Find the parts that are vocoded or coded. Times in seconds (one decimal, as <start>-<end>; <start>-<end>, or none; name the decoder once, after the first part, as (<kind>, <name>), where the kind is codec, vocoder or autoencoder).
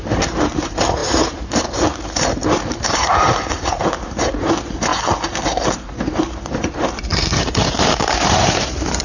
0.0-4.9 (vocoder, BigVGAN v2); 5.7-9.0